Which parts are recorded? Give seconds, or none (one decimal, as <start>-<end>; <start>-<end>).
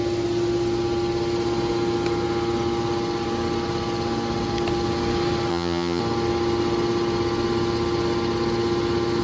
0.0-5.5; 6.0-9.2